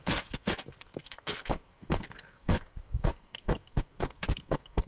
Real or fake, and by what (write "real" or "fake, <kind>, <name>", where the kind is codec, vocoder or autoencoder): fake, codec, SNAC